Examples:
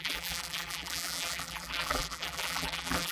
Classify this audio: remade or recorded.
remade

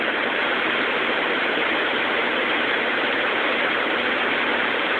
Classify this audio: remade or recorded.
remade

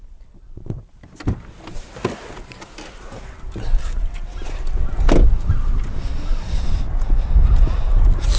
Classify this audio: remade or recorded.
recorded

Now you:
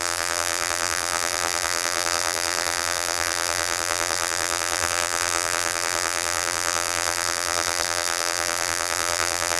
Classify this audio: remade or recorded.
remade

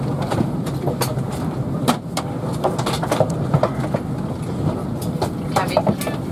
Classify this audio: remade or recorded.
remade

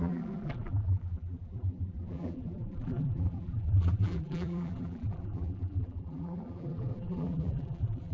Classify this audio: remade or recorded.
remade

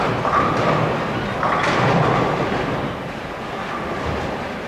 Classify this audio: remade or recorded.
recorded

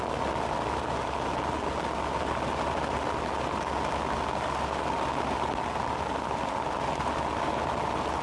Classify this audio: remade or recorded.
recorded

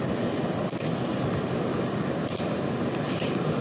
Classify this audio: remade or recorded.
recorded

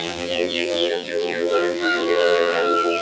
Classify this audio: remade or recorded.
remade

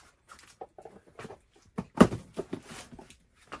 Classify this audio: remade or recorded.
recorded